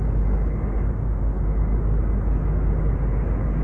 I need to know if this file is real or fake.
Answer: real